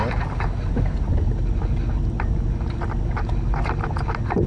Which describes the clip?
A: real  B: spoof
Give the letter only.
A